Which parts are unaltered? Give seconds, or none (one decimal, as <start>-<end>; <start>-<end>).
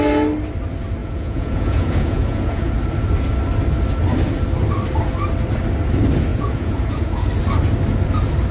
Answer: 0.0-1.0; 2.7-6.3; 7.3-8.5